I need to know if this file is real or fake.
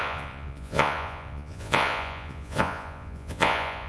fake